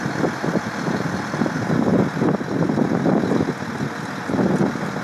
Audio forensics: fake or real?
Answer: real